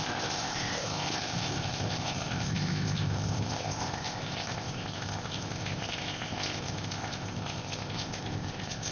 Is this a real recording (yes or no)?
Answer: no